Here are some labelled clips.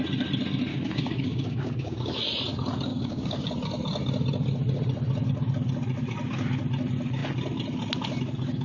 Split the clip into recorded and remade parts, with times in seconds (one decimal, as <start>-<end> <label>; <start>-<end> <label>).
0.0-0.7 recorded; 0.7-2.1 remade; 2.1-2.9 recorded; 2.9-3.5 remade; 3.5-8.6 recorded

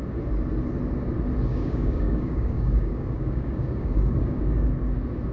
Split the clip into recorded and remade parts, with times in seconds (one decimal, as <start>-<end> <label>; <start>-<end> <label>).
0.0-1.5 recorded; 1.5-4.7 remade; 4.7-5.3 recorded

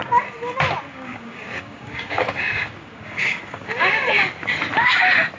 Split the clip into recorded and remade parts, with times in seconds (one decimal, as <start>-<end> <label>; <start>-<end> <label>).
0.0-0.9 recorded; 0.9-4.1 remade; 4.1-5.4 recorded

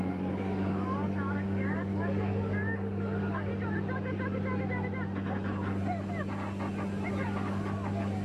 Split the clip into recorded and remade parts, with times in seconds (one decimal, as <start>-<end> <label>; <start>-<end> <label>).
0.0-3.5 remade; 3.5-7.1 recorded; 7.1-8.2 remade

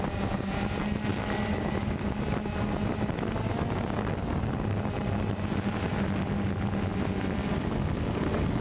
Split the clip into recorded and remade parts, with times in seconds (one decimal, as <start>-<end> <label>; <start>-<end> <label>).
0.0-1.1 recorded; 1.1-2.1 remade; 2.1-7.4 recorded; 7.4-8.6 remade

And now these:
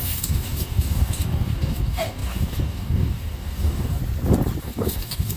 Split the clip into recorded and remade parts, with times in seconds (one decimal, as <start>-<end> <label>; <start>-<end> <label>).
0.0-4.0 remade; 4.0-4.6 recorded; 4.6-5.4 remade

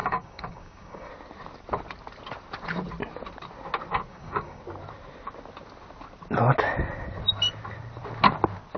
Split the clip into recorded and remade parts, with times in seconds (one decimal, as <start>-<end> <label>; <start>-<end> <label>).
0.0-1.1 remade; 1.1-4.1 recorded; 4.1-4.6 remade; 4.6-8.8 recorded

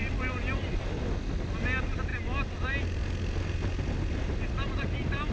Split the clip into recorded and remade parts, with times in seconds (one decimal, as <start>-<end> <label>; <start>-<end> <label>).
0.0-5.3 recorded